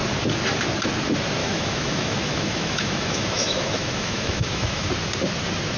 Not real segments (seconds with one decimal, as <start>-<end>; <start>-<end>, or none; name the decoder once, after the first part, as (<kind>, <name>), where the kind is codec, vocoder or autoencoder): 1.4-4.9 (autoencoder, DAC-VAE)